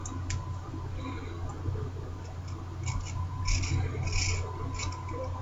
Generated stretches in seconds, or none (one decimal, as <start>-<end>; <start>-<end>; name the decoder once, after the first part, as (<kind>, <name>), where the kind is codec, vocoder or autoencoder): none